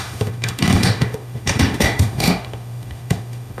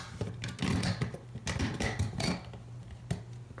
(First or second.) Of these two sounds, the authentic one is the second